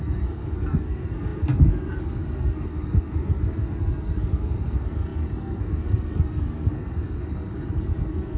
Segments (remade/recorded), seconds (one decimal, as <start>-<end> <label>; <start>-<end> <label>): 0.0-8.4 remade

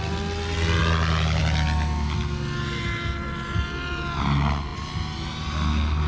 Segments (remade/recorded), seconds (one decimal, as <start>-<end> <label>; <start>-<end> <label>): 0.0-6.1 recorded

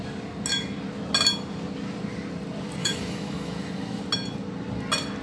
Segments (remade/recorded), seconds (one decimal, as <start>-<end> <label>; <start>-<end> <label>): 0.0-2.8 recorded; 2.8-4.0 remade; 4.0-5.2 recorded

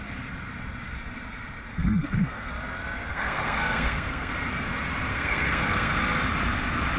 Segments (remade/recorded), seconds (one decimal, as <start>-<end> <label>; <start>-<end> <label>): 0.0-1.7 recorded; 1.7-2.5 remade; 2.5-3.1 recorded; 3.1-4.3 remade; 4.3-5.1 recorded; 5.1-6.0 remade; 6.0-7.0 recorded

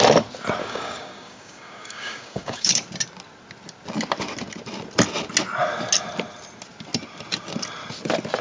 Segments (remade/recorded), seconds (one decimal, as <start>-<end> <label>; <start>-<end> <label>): 0.0-0.6 recorded; 0.6-2.7 remade; 2.7-8.4 recorded

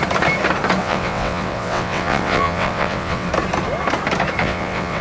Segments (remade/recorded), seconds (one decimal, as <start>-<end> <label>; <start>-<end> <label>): 0.0-0.8 recorded; 0.8-3.3 remade; 3.3-4.4 recorded; 4.4-5.0 remade

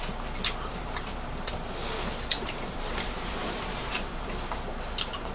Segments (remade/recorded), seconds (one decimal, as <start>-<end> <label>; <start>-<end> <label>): 0.0-0.7 recorded; 0.7-1.5 remade; 1.5-2.3 recorded; 2.3-4.3 remade; 4.3-5.3 recorded